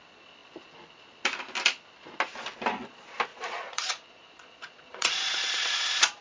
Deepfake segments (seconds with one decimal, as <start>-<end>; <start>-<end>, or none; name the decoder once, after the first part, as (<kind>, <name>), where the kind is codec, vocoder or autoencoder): 3.3-6.2 (vocoder, Vocos)